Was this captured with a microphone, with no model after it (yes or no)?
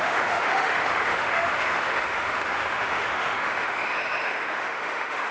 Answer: no